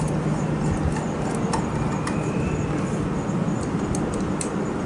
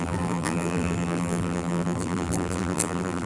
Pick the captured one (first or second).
first